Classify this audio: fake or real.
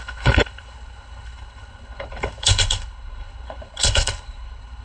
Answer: fake